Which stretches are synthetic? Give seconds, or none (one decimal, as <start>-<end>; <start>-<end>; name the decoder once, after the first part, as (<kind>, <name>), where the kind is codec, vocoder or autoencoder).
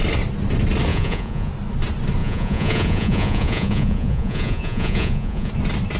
0.9-1.5 (vocoder, Vocos); 2.2-5.5